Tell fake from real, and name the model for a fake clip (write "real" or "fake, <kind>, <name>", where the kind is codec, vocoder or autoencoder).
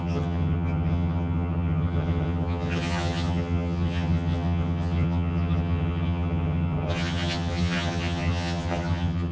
fake, vocoder, HiFi-GAN